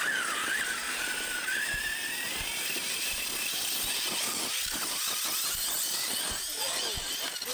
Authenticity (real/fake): real